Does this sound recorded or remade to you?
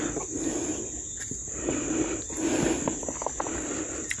recorded